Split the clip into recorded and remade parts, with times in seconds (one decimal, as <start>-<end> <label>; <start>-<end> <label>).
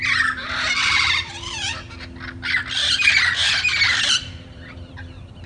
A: 0.0-0.4 recorded; 0.4-1.5 remade; 1.5-2.8 recorded; 2.8-5.5 remade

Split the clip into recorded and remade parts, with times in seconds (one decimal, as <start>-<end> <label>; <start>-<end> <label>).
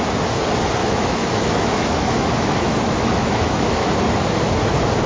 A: 0.0-0.8 recorded; 0.8-3.9 remade; 3.9-5.1 recorded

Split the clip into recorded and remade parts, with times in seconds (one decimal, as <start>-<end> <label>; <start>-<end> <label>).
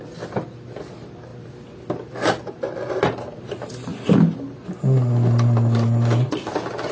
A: 0.0-6.9 recorded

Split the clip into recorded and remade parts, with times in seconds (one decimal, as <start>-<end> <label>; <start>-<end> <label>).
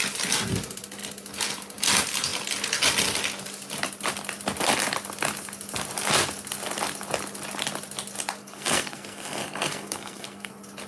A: 0.0-8.4 recorded; 8.4-10.5 remade; 10.5-10.9 recorded